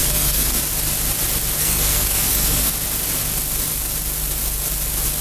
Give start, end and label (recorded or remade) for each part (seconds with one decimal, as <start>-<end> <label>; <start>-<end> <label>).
0.0-0.6 remade; 0.6-1.6 recorded; 1.6-2.7 remade; 2.7-5.2 recorded